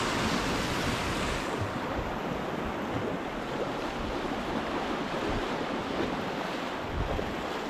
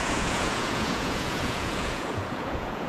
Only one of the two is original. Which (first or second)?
first